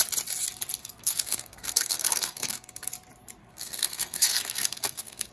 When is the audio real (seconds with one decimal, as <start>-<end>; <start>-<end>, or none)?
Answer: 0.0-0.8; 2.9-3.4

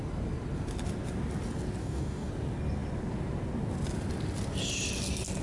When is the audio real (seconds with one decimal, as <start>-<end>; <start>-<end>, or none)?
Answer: 0.0-1.8; 2.3-5.4

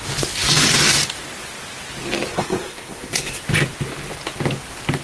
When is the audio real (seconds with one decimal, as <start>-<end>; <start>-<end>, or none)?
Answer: 0.0-2.3; 3.4-5.0

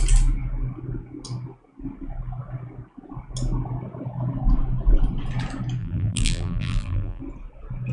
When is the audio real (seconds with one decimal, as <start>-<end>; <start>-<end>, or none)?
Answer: 0.0-5.8; 7.2-7.9